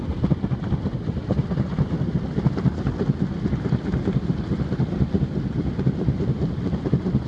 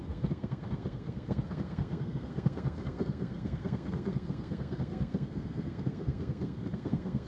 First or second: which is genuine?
first